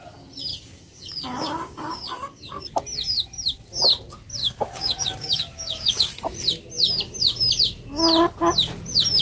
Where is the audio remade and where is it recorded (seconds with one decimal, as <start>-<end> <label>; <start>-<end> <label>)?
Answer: 0.0-0.5 recorded; 0.5-2.6 remade; 2.6-4.4 recorded; 4.4-6.1 remade; 6.1-9.2 recorded